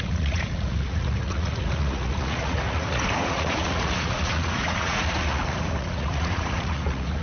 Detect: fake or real fake